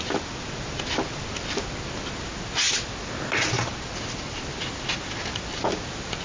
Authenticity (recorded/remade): recorded